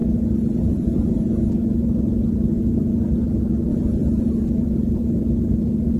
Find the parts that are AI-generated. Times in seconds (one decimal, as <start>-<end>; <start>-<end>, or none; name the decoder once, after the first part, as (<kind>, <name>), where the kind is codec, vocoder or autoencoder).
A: 0.0-1.2 (vocoder, BigVGAN v2); 3.7-5.0